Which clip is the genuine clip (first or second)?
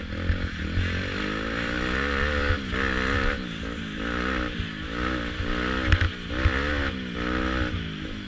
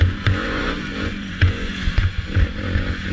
first